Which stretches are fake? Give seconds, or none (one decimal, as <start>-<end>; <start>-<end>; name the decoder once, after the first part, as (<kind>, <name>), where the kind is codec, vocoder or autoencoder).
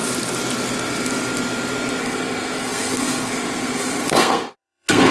2.0-5.1 (codec, SNAC)